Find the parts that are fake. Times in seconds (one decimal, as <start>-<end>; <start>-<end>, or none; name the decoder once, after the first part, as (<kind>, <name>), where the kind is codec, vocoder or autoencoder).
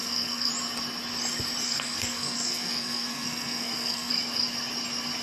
0.0-0.5 (codec, SNAC); 1.6-4.1